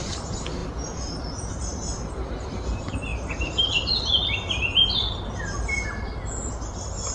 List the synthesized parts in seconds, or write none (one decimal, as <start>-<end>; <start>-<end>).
none